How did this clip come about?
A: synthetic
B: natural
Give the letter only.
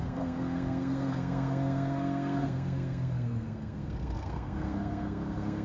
A